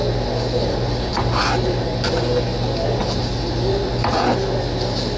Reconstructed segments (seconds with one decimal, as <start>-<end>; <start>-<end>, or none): none